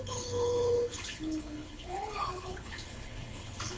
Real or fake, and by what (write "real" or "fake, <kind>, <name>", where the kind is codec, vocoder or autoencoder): fake, codec, HILCodec